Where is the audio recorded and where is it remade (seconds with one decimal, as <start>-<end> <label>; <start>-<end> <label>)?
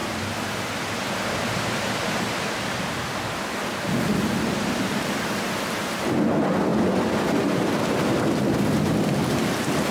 0.0-4.5 remade; 4.5-6.7 recorded; 6.7-8.4 remade; 8.4-9.9 recorded